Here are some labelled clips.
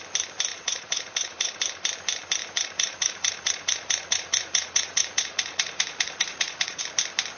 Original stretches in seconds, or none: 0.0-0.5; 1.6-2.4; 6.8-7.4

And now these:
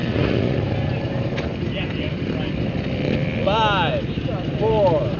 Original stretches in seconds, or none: 0.6-5.2